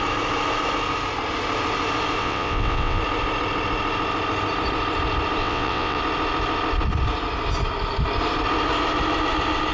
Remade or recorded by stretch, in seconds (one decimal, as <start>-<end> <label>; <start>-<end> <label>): 0.0-2.2 recorded; 2.2-3.0 remade; 3.0-5.4 recorded; 5.4-6.0 remade; 6.0-9.7 recorded